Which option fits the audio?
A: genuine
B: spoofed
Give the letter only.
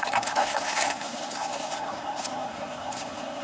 B